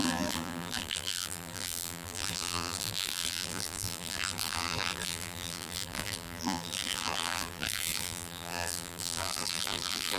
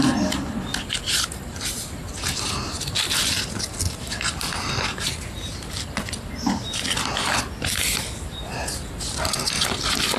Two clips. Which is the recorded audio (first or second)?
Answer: second